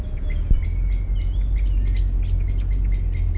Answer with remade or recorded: recorded